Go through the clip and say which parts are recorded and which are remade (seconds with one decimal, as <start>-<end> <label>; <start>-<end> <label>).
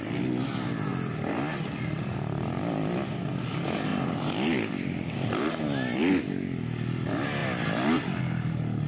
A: 0.0-0.9 recorded; 0.9-3.4 remade; 3.4-3.9 recorded; 3.9-5.6 remade; 5.6-7.4 recorded; 7.4-8.2 remade; 8.2-8.9 recorded